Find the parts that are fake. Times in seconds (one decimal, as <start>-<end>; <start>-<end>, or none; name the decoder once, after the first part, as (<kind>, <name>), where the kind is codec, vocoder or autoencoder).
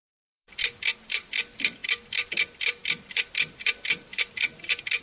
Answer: 0.0-2.8 (vocoder, BigVGAN v2); 3.3-4.1